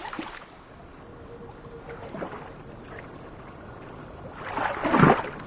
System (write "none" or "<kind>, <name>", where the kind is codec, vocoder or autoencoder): none